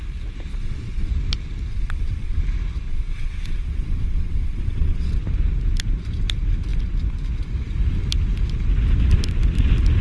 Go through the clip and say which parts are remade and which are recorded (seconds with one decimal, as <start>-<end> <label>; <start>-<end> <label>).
0.0-0.5 recorded; 0.5-1.1 remade; 1.1-1.7 recorded; 1.7-2.4 remade; 2.4-2.9 recorded; 2.9-5.1 remade; 5.1-10.0 recorded